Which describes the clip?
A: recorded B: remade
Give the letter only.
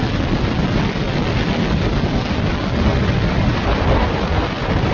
A